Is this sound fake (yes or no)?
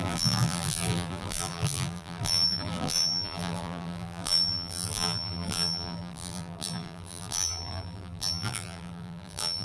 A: yes